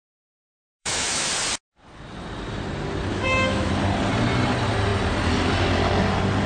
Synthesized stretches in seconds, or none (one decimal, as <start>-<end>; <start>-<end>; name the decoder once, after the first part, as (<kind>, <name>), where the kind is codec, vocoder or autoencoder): 0.8-1.3 (autoencoder, DAC-VAE); 3.1-3.7